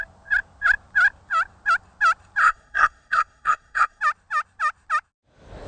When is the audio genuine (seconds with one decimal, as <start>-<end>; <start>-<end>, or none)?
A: 0.0-2.4; 4.0-5.7